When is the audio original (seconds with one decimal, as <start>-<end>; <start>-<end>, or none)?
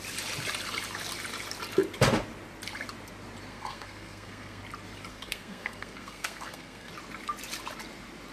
0.0-3.5; 4.6-5.1; 6.9-8.3